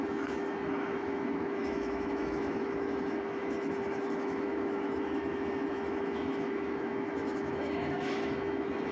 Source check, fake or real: fake